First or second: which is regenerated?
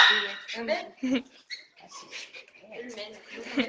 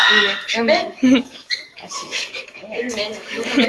second